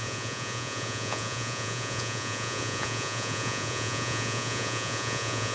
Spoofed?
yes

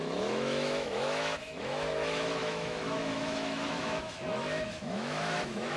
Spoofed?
yes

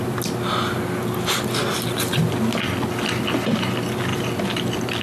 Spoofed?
no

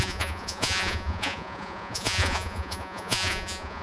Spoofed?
yes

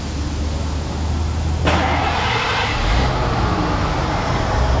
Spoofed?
no